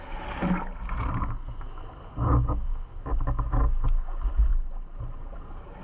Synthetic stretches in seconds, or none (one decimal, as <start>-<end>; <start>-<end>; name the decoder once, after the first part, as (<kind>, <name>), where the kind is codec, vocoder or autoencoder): none